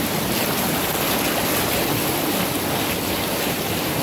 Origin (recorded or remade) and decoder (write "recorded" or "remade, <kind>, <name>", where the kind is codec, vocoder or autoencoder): recorded